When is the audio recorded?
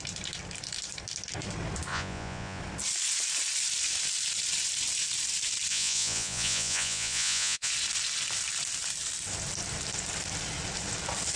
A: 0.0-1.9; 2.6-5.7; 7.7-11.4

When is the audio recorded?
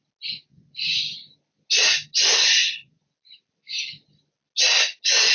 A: 0.0-0.5; 1.0-2.6; 3.1-5.3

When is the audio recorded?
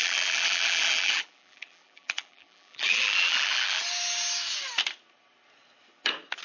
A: 3.8-6.4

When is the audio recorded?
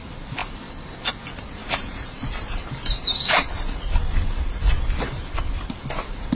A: 0.0-1.6; 5.4-6.3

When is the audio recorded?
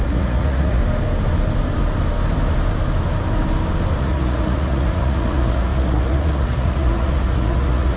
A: 0.8-4.0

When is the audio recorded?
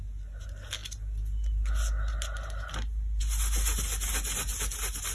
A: 0.0-5.1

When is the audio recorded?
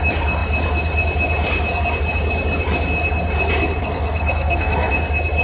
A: 0.0-3.8; 4.9-5.4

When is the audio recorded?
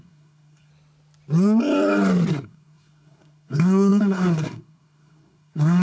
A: 0.7-2.3